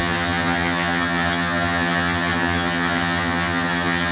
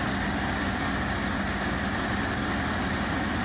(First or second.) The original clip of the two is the second